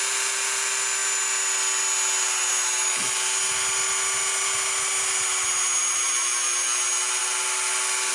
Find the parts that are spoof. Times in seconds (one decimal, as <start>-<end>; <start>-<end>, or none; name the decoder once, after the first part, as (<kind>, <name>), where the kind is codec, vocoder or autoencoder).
none